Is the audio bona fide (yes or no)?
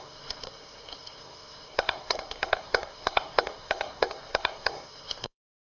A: no